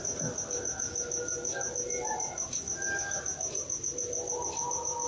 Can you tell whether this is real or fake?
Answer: real